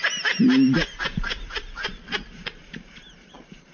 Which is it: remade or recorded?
remade